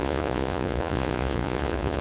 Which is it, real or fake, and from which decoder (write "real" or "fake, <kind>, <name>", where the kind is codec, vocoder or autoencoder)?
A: fake, vocoder, Vocos